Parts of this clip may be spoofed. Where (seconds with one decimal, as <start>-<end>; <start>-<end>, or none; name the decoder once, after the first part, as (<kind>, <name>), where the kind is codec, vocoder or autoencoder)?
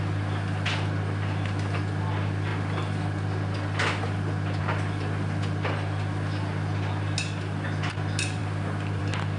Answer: none